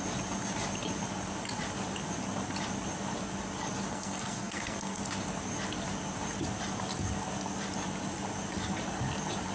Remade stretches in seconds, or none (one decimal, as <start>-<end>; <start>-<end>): 3.9-5.0